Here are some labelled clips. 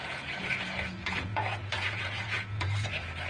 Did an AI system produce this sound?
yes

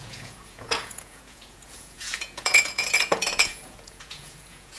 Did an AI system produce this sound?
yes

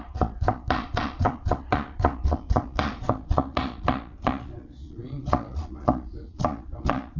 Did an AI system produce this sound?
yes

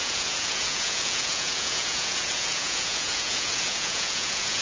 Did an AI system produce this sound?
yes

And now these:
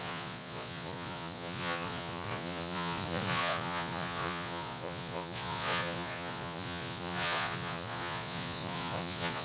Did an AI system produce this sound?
yes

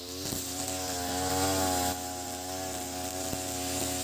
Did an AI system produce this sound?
no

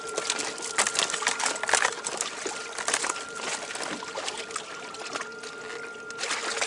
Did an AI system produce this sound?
no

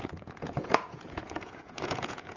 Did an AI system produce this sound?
yes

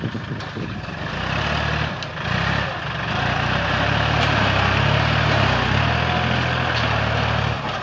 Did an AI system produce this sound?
no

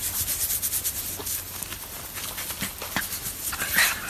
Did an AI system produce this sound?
no